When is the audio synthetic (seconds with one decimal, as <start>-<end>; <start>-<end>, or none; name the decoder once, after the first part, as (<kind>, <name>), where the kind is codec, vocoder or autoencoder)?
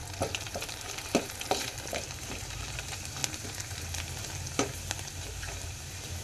0.7-3.2 (vocoder, BigVGAN v2); 4.2-6.2